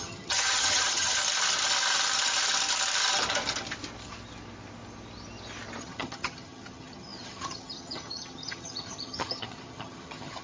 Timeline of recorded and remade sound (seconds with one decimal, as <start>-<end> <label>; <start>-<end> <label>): 0.0-1.2 remade; 1.2-5.8 recorded; 5.8-10.4 remade